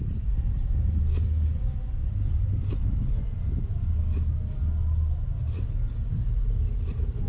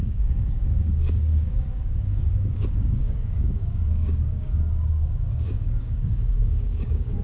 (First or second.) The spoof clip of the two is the second